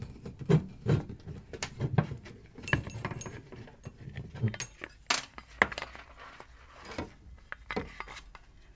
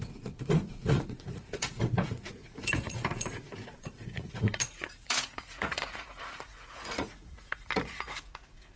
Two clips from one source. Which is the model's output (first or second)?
second